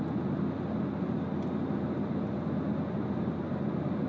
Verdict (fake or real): real